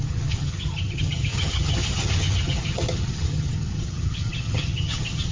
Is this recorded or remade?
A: remade